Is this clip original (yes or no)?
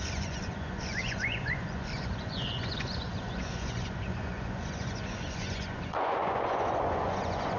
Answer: no